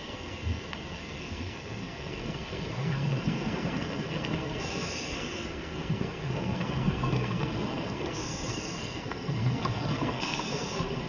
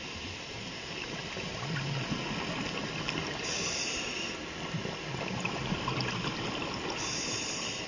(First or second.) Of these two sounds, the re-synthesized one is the first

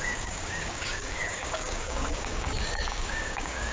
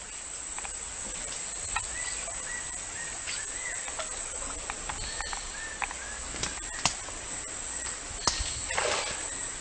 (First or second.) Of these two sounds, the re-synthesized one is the first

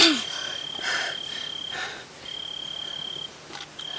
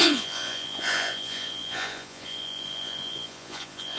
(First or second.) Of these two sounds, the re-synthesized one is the second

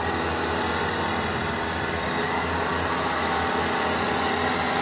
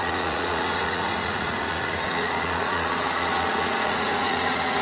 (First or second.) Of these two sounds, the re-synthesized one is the second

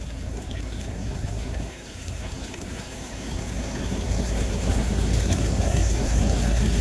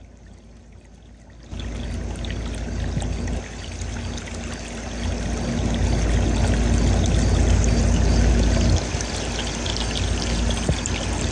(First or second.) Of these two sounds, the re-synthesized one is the first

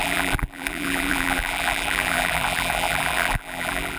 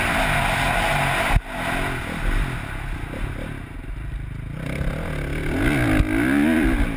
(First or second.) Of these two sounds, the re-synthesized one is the first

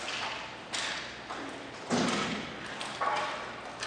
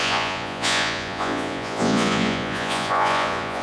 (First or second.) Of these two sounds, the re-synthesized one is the second